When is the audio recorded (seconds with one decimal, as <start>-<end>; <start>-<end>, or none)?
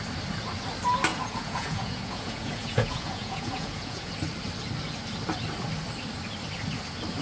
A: 0.0-1.1; 4.1-7.2